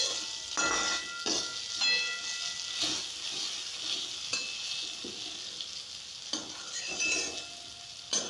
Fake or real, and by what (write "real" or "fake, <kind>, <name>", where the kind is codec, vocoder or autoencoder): real